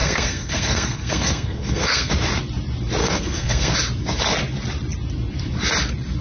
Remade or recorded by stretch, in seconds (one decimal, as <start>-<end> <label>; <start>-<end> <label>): 0.0-2.1 remade; 2.1-3.0 recorded; 3.0-3.7 remade; 3.7-6.2 recorded